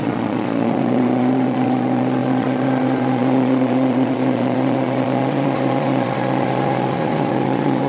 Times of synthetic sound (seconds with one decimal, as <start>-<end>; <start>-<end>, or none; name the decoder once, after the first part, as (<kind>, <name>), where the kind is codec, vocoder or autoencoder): 0.0-7.9 (vocoder, Vocos)